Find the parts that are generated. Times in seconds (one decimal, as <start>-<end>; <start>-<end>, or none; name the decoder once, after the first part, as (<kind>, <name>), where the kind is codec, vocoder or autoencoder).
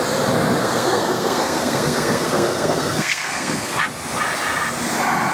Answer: 0.6-3.8 (codec, SNAC)